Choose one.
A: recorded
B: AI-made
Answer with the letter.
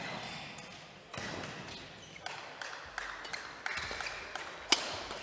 A